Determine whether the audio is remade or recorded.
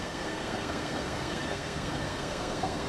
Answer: remade